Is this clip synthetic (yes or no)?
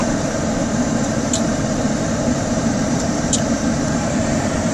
yes